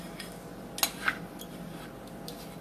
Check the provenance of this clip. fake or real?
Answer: real